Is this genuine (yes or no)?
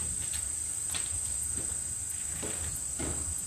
yes